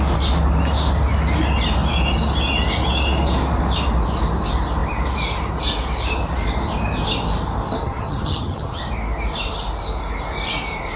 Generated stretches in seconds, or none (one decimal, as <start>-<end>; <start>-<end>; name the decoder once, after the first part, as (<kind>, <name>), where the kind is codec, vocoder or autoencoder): 7.8-8.8 (vocoder, HiFi-GAN)

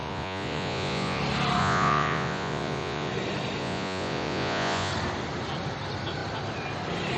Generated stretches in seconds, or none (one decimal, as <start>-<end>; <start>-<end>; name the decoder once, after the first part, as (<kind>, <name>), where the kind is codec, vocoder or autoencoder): 0.0-1.2 (vocoder, Vocos); 1.6-3.1; 3.6-4.9

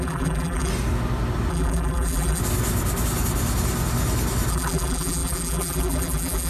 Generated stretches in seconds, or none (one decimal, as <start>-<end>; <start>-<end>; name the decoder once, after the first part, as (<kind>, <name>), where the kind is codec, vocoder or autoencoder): 0.0-0.7 (vocoder, BigVGAN v2); 1.5-2.4; 4.5-6.5

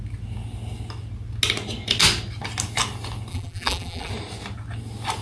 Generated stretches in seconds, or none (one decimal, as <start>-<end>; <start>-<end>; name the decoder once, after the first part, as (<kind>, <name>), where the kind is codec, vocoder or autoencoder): 3.3-4.1 (vocoder, BigVGAN v2)

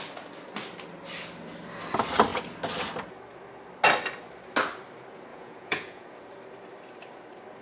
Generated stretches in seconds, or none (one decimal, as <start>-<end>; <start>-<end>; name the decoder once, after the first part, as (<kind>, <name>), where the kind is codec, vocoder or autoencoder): 5.3-6.2 (vocoder, Vocos)

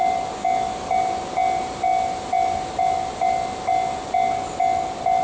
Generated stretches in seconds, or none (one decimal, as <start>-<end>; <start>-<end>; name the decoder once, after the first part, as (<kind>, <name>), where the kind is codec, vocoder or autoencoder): none